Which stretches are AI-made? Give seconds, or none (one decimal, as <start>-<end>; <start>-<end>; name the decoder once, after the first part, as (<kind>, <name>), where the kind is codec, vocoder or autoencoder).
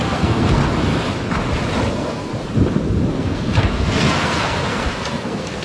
0.0-0.6 (codec, SNAC); 1.9-2.3; 3.1-5.6